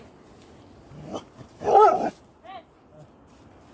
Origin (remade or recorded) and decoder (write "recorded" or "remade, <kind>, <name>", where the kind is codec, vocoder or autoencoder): recorded